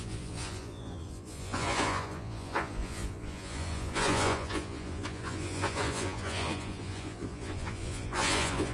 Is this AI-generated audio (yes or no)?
yes